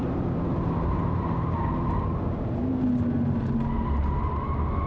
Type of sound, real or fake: real